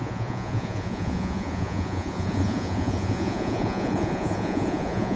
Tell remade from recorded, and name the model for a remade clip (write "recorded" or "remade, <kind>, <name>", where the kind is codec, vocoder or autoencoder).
remade, vocoder, Vocos